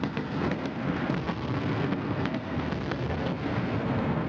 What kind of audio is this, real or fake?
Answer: fake